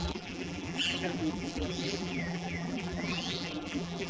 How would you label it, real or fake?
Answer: fake